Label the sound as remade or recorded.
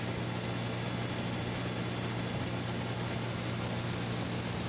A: recorded